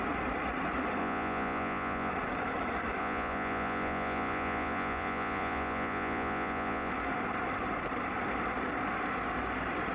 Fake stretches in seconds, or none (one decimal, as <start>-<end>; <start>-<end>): 1.0-2.1; 3.0-6.9

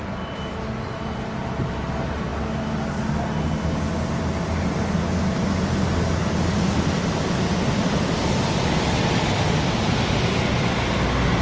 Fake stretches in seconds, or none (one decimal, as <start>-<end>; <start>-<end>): none

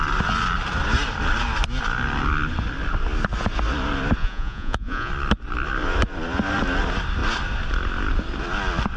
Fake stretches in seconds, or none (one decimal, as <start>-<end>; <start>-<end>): 4.2-5.1

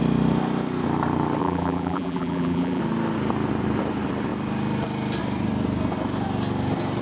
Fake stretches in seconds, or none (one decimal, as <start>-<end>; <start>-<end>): 1.4-2.8

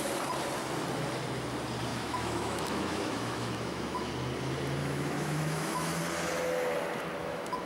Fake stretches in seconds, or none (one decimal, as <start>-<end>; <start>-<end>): 1.9-4.1; 4.8-6.0; 7.2-7.7

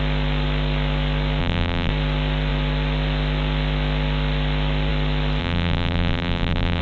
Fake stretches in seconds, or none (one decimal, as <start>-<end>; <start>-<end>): 1.4-1.9; 5.4-6.8

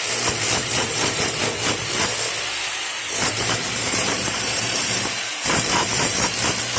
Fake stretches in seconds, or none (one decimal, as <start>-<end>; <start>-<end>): 0.6-1.4; 3.0-6.3